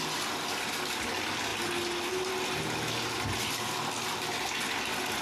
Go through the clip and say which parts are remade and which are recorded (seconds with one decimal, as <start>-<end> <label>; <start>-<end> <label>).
0.0-5.2 recorded